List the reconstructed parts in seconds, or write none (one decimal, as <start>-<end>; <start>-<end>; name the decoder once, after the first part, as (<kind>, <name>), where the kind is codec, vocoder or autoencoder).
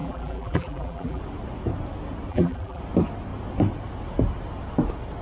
0.0-1.2 (vocoder, BigVGAN v2); 2.3-2.8